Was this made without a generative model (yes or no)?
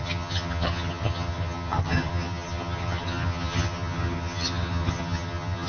no